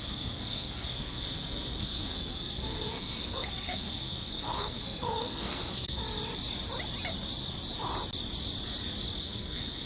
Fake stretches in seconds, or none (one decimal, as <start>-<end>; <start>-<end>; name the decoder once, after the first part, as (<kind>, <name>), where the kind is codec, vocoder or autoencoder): 0.0-6.0 (codec, SNAC); 9.2-9.9